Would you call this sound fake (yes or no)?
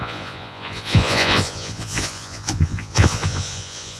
yes